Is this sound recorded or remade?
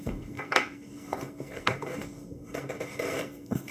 remade